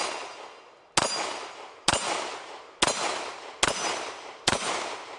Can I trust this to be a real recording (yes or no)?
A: yes